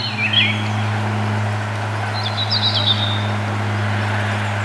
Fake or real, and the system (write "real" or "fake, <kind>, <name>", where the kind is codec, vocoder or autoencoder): real